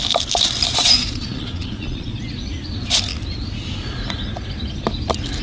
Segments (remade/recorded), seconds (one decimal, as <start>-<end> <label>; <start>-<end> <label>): 0.0-0.7 recorded; 0.7-2.2 remade; 2.2-5.4 recorded